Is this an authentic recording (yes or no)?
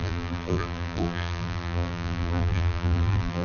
no